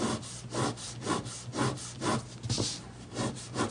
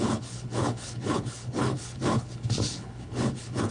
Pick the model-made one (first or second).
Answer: second